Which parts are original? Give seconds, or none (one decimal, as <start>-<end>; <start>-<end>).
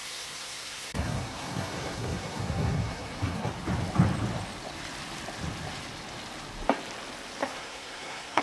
3.5-7.4